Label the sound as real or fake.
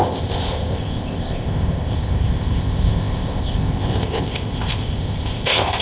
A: fake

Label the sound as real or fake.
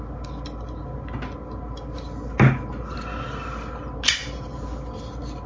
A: real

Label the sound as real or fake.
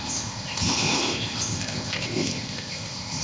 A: fake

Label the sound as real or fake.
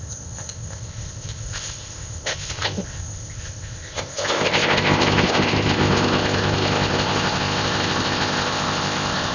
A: fake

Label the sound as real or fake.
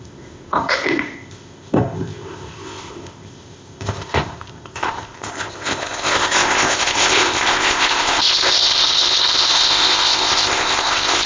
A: fake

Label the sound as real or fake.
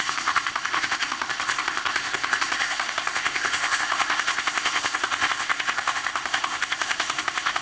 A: fake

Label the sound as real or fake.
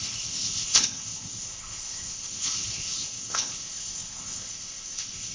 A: fake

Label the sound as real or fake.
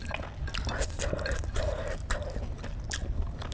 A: real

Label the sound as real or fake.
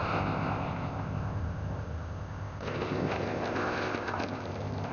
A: fake